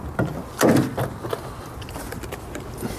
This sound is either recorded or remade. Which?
recorded